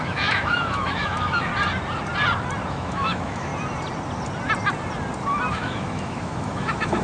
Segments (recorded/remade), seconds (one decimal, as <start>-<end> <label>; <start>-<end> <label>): 0.0-1.5 remade; 1.5-2.7 recorded; 2.7-3.5 remade; 3.5-5.5 recorded; 5.5-7.0 remade